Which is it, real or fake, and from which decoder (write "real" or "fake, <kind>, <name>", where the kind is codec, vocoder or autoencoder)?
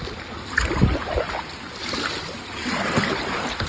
real